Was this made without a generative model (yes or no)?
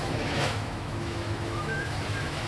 no